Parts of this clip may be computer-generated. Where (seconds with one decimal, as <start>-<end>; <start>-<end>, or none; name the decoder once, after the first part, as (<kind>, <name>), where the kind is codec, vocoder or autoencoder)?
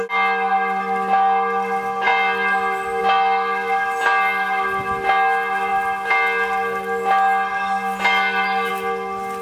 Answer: none